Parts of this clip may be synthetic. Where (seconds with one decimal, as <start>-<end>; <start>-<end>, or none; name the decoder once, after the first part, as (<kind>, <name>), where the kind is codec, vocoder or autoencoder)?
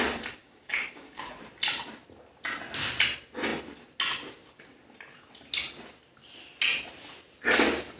0.4-1.2 (codec, DAC)